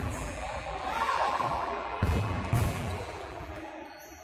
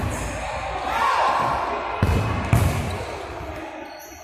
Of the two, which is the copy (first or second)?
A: first